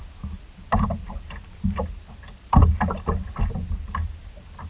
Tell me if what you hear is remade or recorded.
recorded